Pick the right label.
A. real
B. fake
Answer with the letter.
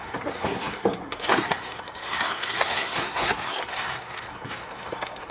B